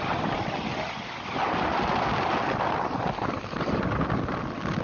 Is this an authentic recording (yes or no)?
yes